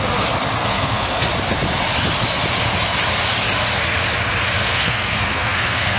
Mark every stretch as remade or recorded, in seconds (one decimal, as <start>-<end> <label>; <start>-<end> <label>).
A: 0.0-0.6 recorded; 0.6-1.3 remade; 1.3-4.6 recorded; 4.6-6.0 remade